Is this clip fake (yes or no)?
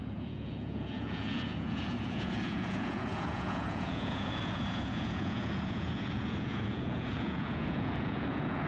yes